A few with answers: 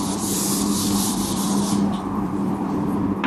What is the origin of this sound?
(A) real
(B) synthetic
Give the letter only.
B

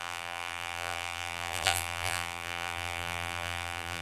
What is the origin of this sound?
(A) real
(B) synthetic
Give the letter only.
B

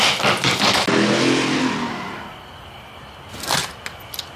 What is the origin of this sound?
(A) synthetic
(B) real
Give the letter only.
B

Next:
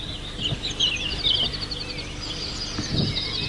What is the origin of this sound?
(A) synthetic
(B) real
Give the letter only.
B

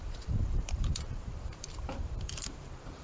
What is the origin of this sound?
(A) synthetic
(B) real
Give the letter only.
A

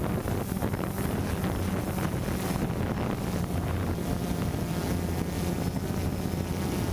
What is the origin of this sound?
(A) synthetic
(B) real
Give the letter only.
B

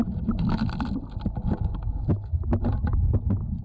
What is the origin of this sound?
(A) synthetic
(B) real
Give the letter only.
B